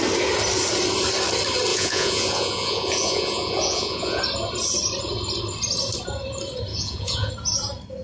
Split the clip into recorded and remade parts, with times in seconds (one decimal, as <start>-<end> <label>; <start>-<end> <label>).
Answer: 0.0-1.7 recorded; 1.7-4.2 remade; 4.2-6.7 recorded; 6.7-7.3 remade; 7.3-8.0 recorded